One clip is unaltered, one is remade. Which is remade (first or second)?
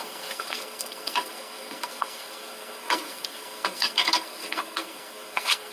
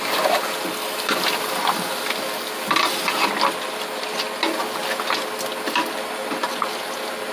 first